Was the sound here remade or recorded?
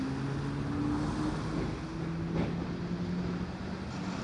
recorded